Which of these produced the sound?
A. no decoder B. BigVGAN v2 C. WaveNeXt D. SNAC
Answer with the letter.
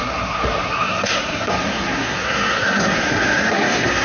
D